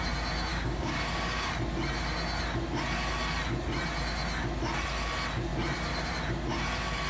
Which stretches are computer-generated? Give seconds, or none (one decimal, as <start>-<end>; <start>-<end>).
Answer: 0.5-1.5